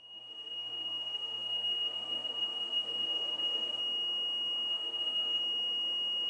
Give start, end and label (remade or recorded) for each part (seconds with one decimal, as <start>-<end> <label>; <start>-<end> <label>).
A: 0.0-3.8 remade; 3.8-4.7 recorded; 4.7-5.4 remade; 5.4-6.3 recorded